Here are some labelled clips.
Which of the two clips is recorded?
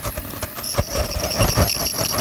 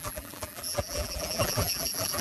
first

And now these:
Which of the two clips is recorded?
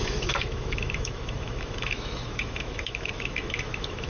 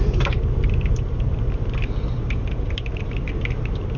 second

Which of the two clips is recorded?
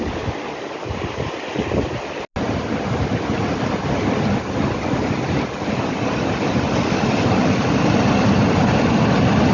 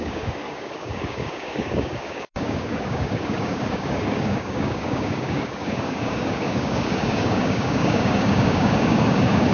first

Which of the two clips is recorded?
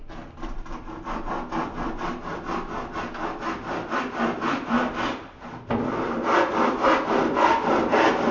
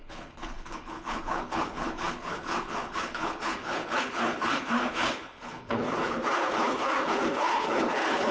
first